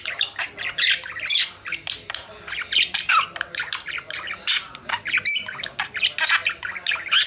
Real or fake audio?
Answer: real